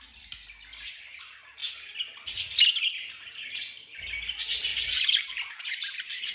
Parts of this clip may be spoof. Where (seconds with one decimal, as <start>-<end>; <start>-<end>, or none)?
4.7-6.3